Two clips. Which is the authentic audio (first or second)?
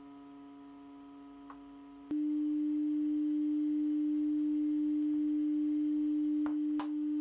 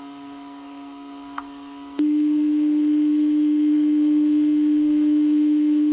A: first